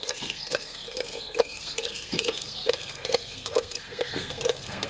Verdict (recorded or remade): remade